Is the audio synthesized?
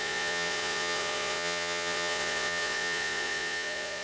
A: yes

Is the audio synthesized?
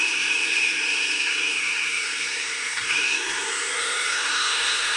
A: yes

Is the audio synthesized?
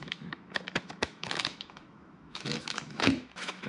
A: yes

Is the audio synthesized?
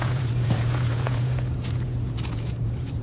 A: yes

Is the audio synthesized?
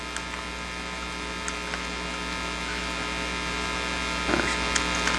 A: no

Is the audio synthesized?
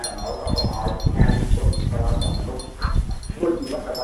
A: no